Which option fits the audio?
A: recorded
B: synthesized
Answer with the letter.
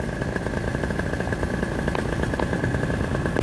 A